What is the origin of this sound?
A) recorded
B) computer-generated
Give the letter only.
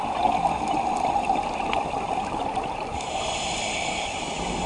A